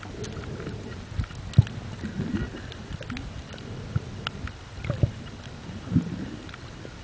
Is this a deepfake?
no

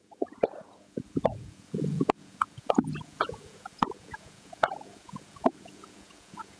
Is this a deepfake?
yes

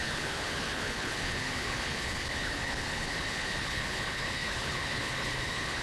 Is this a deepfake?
yes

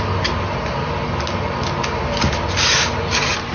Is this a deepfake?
no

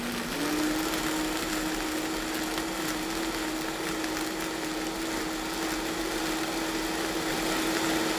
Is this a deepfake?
no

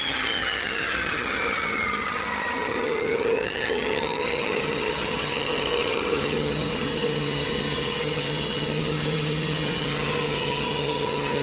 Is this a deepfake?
yes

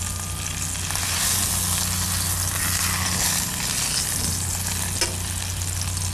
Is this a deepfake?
no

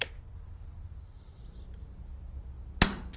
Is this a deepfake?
no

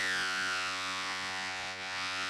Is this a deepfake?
yes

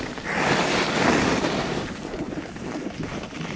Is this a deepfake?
no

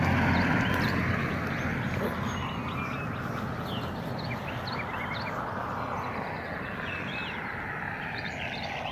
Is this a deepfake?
no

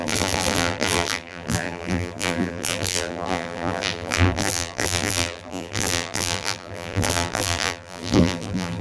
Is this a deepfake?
yes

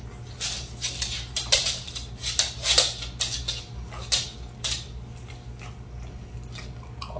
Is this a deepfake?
no